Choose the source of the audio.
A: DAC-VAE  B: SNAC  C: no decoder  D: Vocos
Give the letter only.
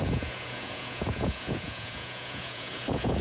D